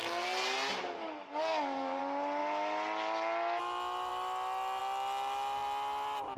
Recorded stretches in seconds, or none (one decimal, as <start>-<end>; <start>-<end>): 0.0-1.0; 2.0-6.4